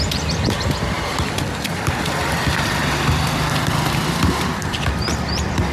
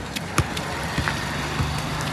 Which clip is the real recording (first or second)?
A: second